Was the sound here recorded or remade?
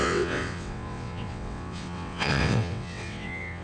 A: remade